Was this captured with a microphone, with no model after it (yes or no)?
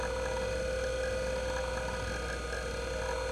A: yes